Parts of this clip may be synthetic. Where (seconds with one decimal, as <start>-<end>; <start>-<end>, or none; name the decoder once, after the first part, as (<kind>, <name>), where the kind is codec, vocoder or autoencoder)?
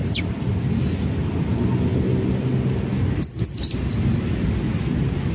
none